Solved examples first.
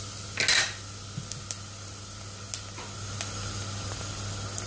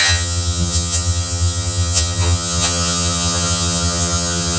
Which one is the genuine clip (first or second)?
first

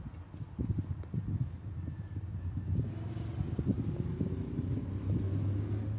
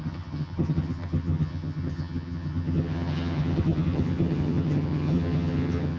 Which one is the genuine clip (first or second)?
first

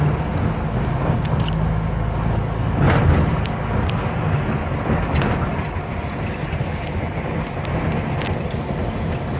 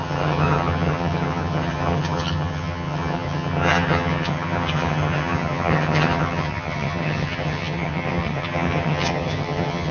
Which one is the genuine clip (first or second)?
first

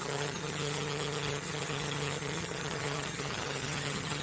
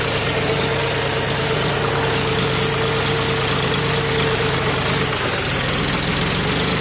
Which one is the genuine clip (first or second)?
second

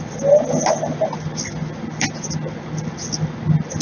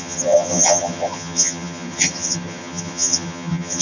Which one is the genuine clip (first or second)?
first